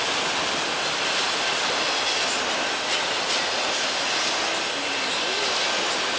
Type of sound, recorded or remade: recorded